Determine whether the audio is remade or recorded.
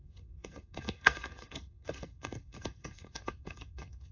remade